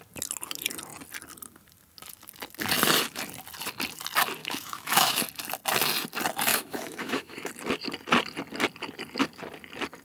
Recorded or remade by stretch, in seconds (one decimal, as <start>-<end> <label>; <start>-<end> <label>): 0.0-4.4 recorded; 4.4-5.2 remade; 5.2-6.5 recorded; 6.5-7.5 remade; 7.5-10.0 recorded